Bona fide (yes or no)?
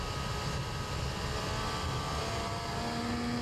yes